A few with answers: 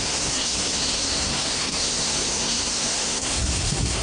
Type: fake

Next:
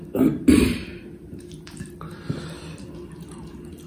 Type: real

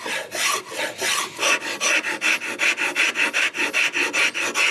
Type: real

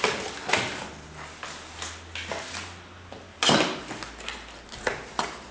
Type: real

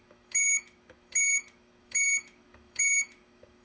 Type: fake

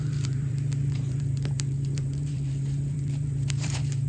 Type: fake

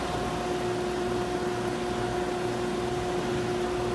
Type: real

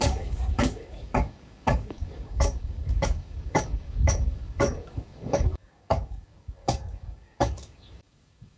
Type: fake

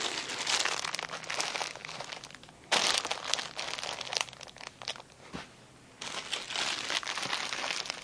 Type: real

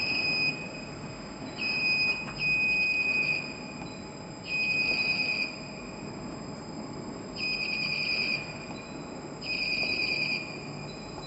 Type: real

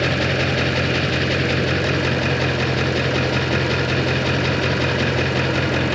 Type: real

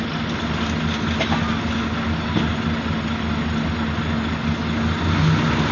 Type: real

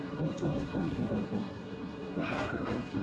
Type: fake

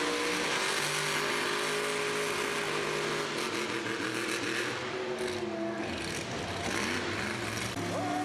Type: real